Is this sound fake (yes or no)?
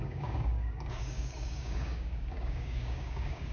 yes